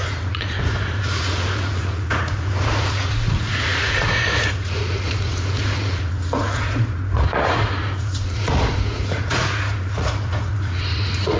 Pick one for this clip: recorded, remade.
remade